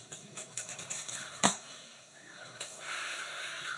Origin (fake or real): fake